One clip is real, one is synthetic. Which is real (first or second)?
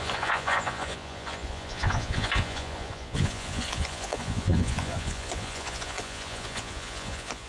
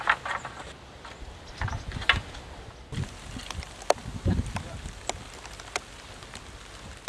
second